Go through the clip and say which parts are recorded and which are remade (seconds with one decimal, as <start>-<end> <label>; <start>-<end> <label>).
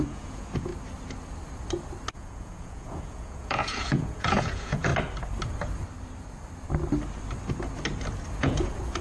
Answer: 0.0-0.7 remade; 0.7-2.1 recorded; 2.1-4.9 remade; 4.9-8.3 recorded; 8.3-9.0 remade